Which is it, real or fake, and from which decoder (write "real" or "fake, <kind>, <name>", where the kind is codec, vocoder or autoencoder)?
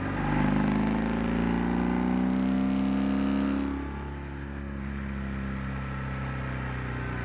real